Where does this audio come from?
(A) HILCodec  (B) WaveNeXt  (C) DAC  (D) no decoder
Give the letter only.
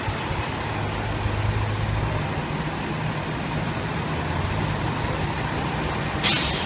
D